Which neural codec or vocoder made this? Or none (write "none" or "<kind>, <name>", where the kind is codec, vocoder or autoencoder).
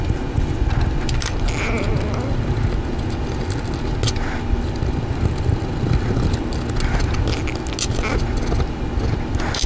none